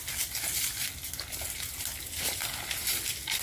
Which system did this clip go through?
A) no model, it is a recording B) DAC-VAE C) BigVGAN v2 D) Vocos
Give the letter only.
A